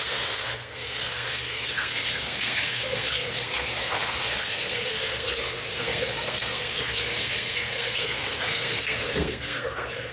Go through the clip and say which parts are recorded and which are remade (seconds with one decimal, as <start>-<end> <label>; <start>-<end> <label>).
0.0-10.1 remade